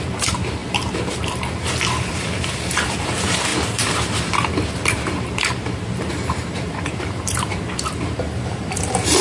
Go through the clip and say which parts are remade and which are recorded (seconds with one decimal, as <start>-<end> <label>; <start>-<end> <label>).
0.0-9.2 remade